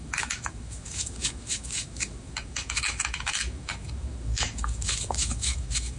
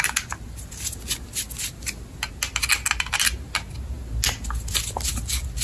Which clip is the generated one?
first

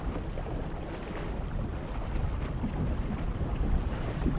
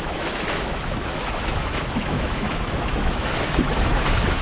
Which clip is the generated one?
second